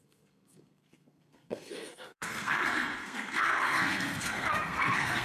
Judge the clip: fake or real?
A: fake